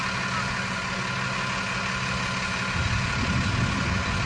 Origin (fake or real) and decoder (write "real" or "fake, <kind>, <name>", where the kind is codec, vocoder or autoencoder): real